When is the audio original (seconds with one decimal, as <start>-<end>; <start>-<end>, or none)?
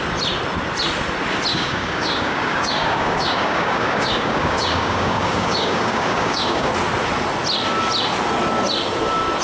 0.0-1.5; 6.7-9.4